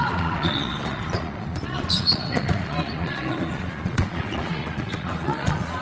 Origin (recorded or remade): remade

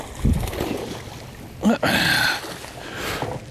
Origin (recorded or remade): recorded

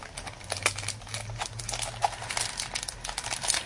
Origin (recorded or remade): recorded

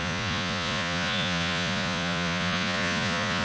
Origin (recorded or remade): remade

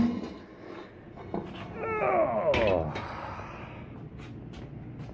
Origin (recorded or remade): recorded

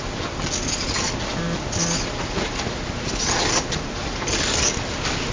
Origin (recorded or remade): recorded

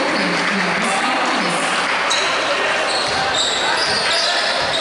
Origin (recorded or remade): recorded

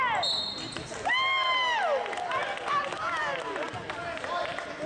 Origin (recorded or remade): recorded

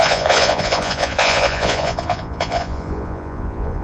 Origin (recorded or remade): remade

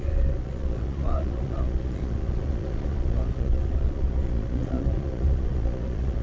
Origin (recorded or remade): remade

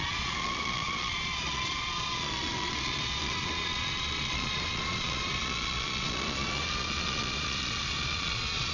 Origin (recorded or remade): remade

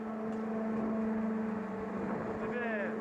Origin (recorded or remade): recorded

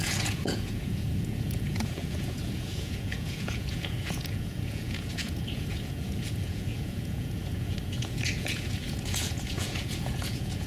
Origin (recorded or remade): remade